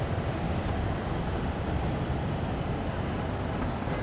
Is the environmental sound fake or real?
real